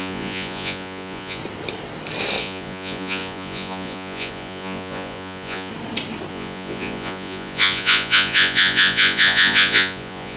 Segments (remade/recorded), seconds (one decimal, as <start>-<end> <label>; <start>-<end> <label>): 0.0-1.4 remade; 1.4-2.4 recorded; 2.4-5.7 remade; 5.7-6.3 recorded; 6.3-10.4 remade